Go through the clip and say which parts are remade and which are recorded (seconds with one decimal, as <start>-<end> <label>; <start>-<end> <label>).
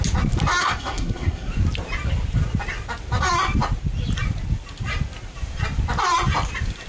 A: 0.0-0.6 recorded; 0.6-1.5 remade; 1.5-6.9 recorded